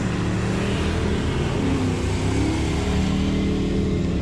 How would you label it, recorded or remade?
recorded